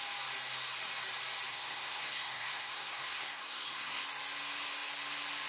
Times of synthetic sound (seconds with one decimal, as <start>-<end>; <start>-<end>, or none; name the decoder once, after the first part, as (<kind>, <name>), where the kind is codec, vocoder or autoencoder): 1.5-4.0 (codec, SNAC)